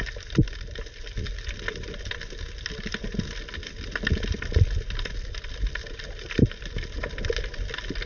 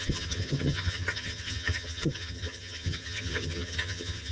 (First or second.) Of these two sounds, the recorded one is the first